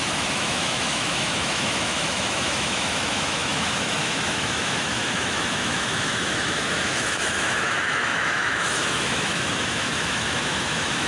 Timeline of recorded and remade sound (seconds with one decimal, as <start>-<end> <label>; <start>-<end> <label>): 0.0-11.1 remade